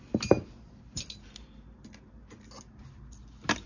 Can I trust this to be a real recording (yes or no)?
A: yes